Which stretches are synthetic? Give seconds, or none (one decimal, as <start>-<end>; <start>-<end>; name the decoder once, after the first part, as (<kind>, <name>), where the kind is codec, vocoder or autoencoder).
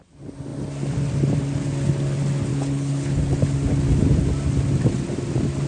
2.5-3.2 (codec, HILCodec)